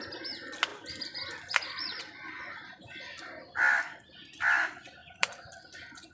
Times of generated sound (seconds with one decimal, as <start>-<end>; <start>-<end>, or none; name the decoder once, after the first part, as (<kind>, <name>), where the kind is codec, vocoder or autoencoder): 0.7-4.4 (vocoder, BigVGAN v2); 5.0-6.1